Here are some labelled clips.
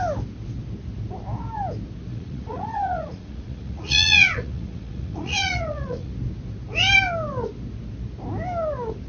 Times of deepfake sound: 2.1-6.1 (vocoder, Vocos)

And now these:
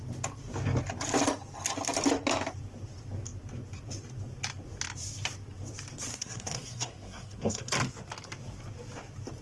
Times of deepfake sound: 6.1-7.7 (codec, SNAC)

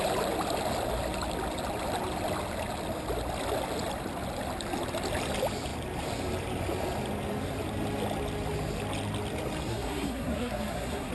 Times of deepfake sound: 9.7-11.1 (codec, SNAC)

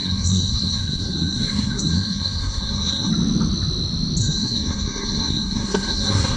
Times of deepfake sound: 0.0-3.1 (codec, SNAC); 4.2-6.4

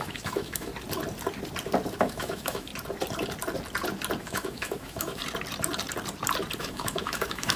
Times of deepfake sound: 0.0-0.7 (autoencoder, DAC-VAE); 2.0-2.7; 4.2-5.2; 6.6-7.6

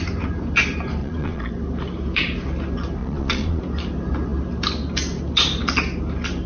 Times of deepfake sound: 1.0-1.5 (vocoder, Vocos); 3.0-3.6

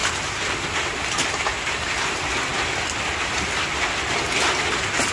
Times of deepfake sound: none